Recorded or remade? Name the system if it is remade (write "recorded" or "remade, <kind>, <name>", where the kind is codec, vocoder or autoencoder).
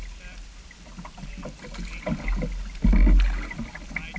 recorded